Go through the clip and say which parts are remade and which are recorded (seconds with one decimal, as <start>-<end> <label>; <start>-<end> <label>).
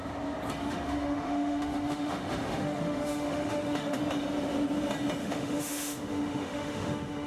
0.0-0.6 recorded; 0.6-4.0 remade; 4.0-5.2 recorded; 5.2-7.3 remade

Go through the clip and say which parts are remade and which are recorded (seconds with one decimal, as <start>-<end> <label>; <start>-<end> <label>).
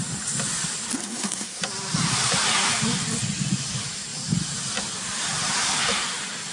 0.0-1.0 recorded; 1.0-1.6 remade; 1.6-6.5 recorded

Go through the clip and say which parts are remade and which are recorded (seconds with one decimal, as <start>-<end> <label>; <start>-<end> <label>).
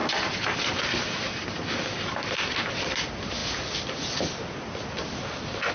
0.0-5.7 recorded